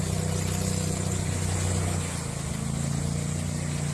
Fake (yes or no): no